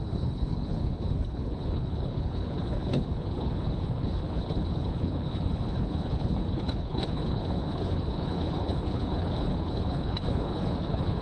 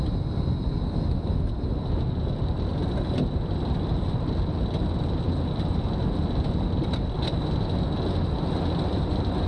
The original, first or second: second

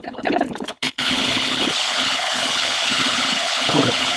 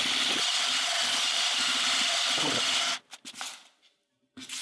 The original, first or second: second